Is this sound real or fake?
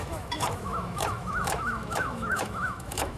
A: fake